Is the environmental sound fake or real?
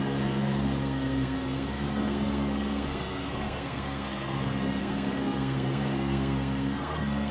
fake